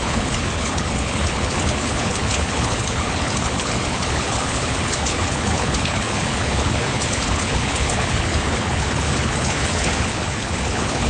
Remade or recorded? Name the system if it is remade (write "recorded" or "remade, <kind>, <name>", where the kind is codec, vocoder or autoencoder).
remade, codec, HILCodec